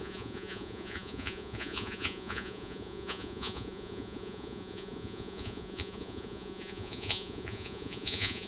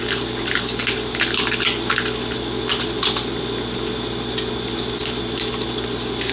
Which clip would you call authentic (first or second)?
second